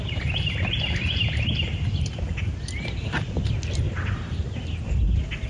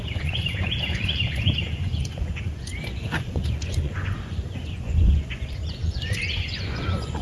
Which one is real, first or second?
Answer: first